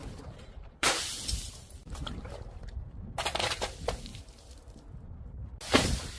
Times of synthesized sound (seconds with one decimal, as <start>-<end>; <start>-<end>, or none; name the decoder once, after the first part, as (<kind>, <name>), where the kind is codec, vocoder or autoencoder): 0.0-1.5 (vocoder, BigVGAN v2); 4.1-5.1